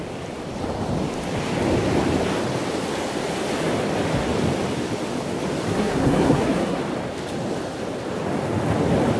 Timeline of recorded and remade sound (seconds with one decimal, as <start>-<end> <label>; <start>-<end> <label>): 0.0-5.7 recorded; 5.7-6.8 remade; 6.8-9.2 recorded

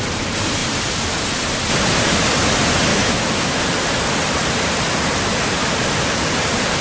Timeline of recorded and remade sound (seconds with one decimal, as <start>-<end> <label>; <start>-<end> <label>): 0.0-2.9 recorded; 2.9-3.6 remade; 3.6-6.8 recorded

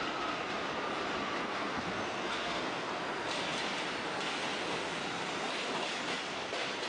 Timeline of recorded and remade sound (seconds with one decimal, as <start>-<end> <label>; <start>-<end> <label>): 0.0-1.4 recorded; 1.4-3.0 remade; 3.0-6.9 recorded

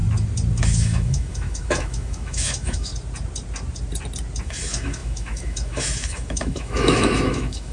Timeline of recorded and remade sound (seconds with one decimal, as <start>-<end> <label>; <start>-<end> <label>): 0.0-0.6 recorded; 0.6-2.9 remade; 2.9-4.4 recorded; 4.4-7.7 remade

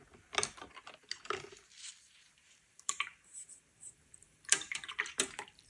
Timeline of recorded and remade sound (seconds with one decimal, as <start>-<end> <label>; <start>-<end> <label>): 0.0-2.0 recorded; 2.0-5.7 remade

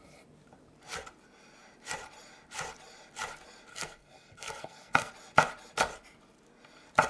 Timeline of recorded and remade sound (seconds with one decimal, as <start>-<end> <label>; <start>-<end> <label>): 0.0-3.7 recorded; 3.7-5.1 remade; 5.1-7.1 recorded

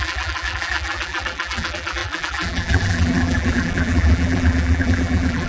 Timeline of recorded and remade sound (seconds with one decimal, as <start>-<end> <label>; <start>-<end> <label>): 0.0-5.5 remade